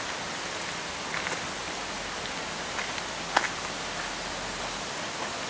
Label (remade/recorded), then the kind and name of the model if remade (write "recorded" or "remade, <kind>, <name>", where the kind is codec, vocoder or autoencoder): recorded